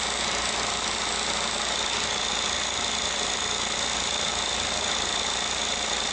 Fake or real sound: real